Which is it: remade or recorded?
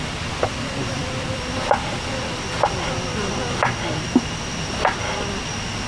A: recorded